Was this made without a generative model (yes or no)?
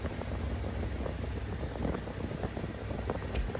yes